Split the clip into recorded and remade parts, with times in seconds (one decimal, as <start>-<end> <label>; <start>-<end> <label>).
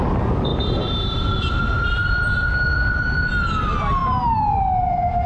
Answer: 0.0-0.5 recorded; 0.5-2.5 remade; 2.5-5.3 recorded